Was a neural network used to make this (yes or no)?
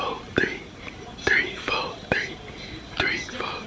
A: no